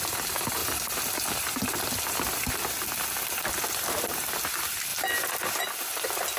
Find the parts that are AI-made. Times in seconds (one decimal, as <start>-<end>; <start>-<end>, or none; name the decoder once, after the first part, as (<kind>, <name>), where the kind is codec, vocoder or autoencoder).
none